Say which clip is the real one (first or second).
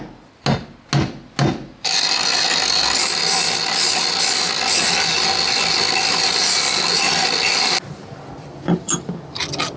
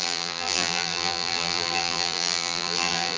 first